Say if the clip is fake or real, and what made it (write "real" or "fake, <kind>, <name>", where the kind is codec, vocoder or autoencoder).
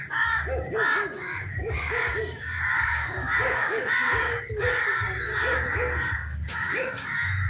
fake, codec, DAC